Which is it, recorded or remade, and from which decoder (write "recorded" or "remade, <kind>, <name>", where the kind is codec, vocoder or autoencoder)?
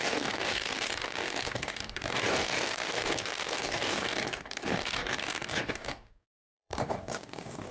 remade, codec, DAC